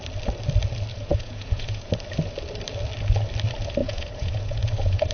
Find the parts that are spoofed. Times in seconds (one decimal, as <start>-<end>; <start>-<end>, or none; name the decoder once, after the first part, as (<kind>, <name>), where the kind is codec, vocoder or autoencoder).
0.9-1.9 (vocoder, Vocos); 3.8-5.1